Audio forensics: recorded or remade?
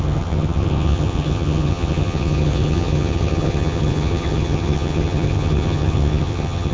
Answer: remade